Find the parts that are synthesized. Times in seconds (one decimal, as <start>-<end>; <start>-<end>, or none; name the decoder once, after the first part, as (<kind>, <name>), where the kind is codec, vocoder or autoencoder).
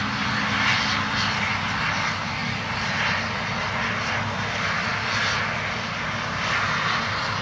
none